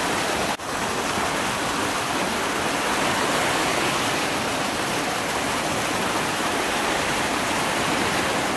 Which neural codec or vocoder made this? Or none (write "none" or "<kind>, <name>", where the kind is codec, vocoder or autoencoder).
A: none